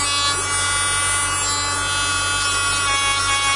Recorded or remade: recorded